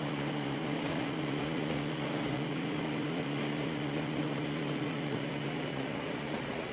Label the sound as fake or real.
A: fake